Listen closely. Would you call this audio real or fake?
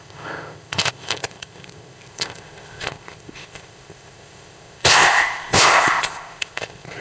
fake